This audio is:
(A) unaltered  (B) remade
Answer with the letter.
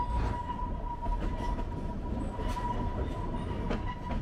A